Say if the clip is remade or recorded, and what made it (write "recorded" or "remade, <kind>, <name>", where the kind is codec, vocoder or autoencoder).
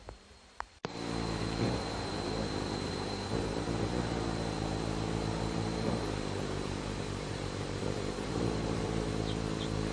remade, vocoder, BigVGAN v2